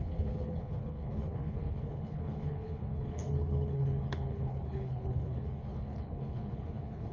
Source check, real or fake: fake